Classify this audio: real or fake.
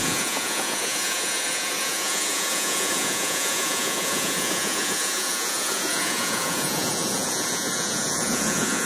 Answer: fake